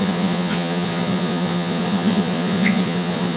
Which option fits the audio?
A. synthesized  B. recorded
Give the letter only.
A